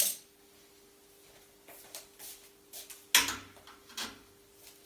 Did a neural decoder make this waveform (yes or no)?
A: no